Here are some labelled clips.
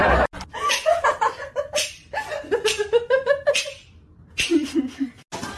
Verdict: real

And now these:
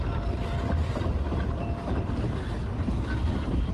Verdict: real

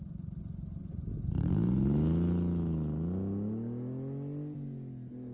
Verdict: real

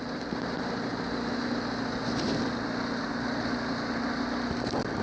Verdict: real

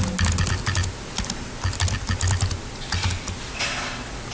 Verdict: real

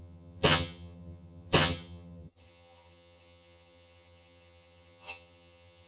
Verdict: fake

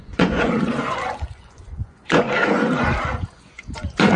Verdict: fake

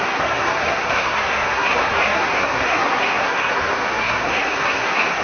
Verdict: fake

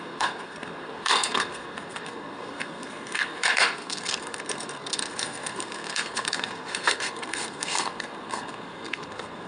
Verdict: fake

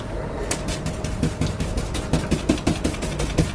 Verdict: real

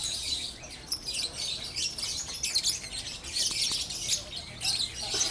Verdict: real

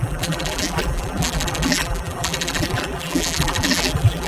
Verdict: fake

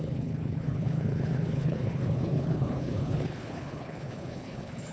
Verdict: fake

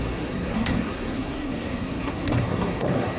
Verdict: fake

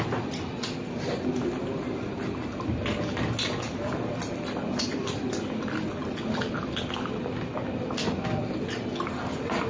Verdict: real